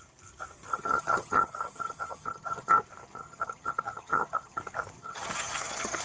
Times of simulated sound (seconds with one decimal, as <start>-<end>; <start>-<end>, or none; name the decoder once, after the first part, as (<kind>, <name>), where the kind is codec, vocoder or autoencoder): 0.7-2.7 (vocoder, HiFi-GAN); 3.2-4.6; 5.0-6.0